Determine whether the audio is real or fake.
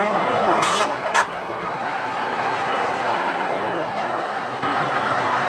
fake